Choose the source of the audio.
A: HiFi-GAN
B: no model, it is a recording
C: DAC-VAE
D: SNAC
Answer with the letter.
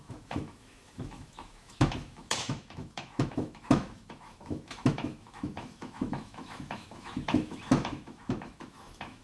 C